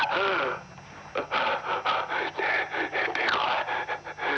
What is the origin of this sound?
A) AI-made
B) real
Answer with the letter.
B